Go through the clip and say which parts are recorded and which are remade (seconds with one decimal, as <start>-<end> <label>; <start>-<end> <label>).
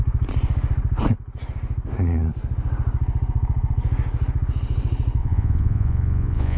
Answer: 0.0-5.2 recorded; 5.2-6.6 remade